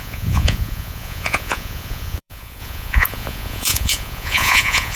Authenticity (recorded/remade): remade